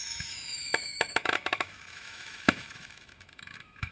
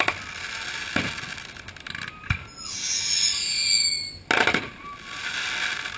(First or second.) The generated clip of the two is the first